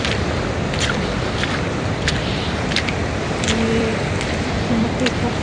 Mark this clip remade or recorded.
remade